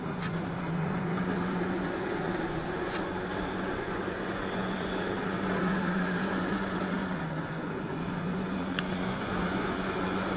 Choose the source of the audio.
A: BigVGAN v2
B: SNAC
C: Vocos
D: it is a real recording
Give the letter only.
C